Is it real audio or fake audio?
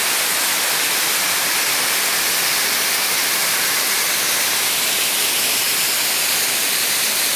real